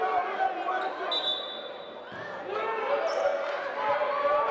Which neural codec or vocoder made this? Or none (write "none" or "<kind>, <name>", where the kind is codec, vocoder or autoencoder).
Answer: none